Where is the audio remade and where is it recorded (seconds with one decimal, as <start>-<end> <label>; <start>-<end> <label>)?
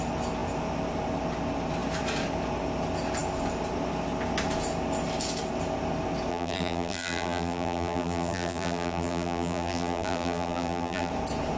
0.0-6.3 recorded; 6.3-11.1 remade; 11.1-11.6 recorded